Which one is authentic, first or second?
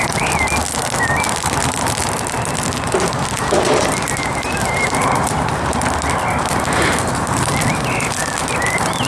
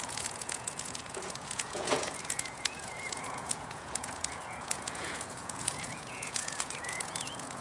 first